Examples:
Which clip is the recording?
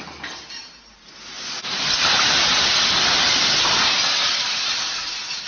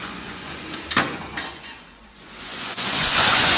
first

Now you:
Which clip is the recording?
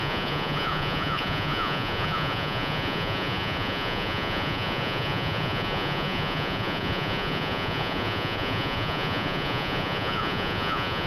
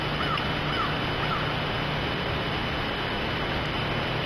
second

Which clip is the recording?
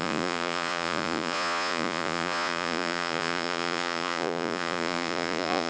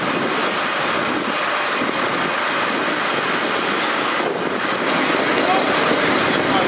second